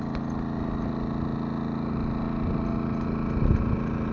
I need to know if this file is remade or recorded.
recorded